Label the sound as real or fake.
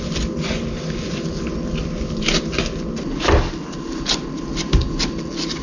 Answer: real